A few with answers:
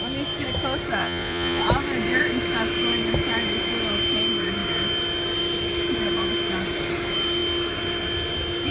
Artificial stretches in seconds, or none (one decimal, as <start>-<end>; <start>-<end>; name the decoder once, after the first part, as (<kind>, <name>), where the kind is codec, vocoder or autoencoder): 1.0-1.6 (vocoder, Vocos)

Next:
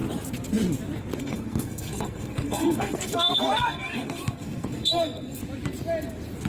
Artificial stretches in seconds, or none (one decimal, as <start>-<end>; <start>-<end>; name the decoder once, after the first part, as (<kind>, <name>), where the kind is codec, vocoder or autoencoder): 1.2-5.4 (codec, SNAC)

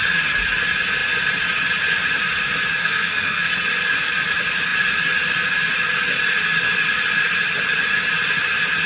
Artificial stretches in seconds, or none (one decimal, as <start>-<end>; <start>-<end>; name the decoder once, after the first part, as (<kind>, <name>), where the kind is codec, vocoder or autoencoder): 2.8-3.5 (codec, SNAC)